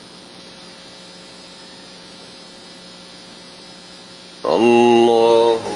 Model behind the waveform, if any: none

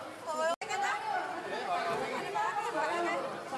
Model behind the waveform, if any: none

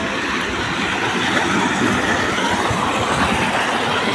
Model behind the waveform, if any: none